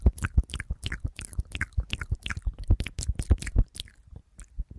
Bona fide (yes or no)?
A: yes